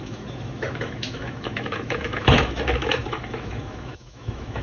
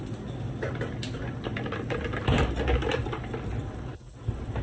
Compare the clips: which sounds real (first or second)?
second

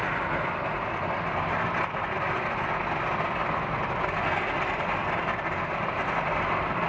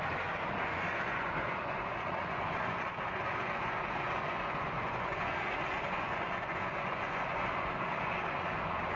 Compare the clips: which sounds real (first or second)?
first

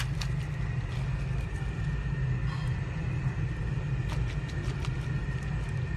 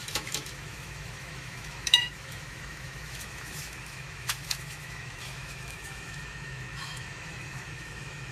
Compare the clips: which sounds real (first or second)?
first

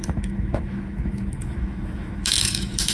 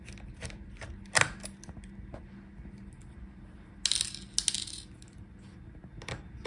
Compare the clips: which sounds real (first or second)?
second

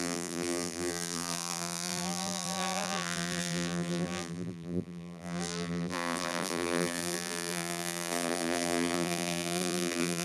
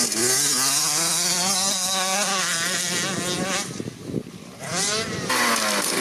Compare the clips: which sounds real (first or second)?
second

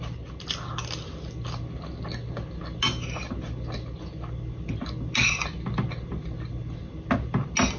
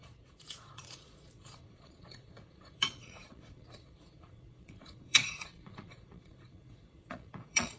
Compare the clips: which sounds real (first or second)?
first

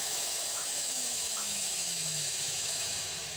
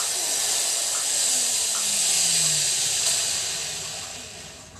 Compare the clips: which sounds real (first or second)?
second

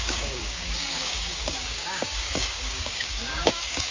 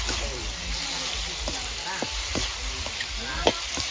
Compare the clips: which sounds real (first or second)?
second